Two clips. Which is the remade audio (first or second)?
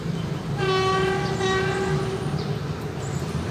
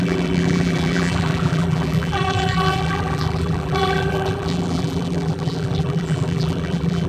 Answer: second